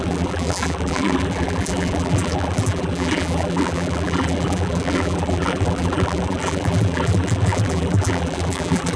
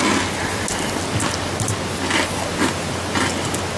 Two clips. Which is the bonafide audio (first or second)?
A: second